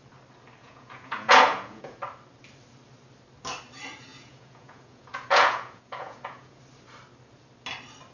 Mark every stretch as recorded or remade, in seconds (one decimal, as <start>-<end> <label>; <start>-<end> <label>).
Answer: 0.0-0.6 recorded; 0.6-2.0 remade; 2.0-4.1 recorded; 4.1-6.6 remade; 6.6-8.1 recorded